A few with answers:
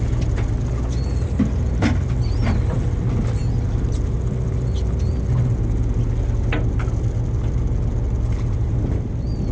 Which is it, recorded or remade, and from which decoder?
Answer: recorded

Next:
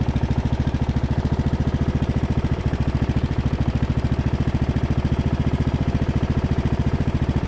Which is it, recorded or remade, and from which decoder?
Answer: remade, vocoder, BigVGAN v2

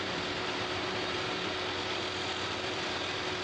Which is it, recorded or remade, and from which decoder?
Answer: remade, vocoder, BigVGAN v2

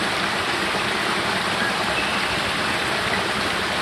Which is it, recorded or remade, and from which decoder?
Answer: remade, vocoder, BigVGAN v2